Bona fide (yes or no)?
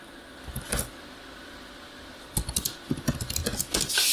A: yes